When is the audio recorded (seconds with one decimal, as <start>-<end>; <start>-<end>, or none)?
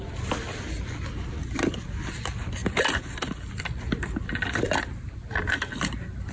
0.0-6.3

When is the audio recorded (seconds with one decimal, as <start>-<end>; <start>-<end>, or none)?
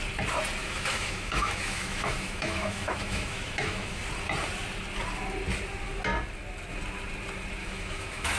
0.0-0.6; 4.0-7.6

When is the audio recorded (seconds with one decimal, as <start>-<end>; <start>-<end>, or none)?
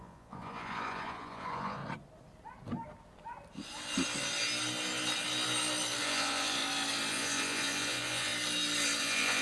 1.8-6.0; 6.6-7.1; 8.3-9.0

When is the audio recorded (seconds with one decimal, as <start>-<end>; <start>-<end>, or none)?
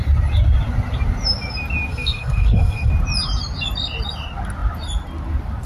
0.0-1.9; 2.9-5.7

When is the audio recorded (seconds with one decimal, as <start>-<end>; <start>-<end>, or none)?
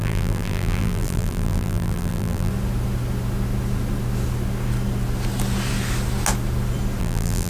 2.5-7.0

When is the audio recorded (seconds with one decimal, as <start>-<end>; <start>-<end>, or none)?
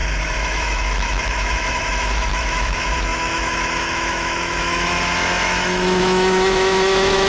none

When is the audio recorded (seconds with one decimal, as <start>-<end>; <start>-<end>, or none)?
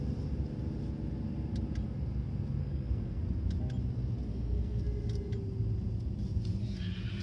0.0-2.6; 3.2-4.3; 4.8-7.2